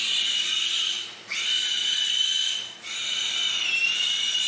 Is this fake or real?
real